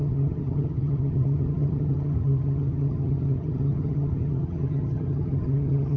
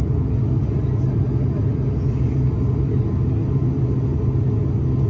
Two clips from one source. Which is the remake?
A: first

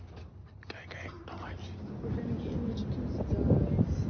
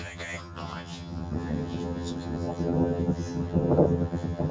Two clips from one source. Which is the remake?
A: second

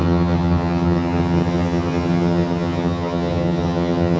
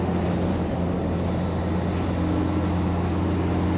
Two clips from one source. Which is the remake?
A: first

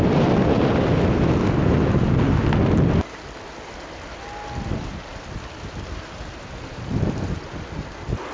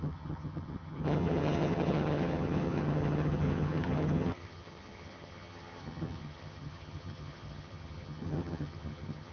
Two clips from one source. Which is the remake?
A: second